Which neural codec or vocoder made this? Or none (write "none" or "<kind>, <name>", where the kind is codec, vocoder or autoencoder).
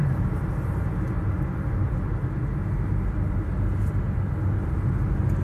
none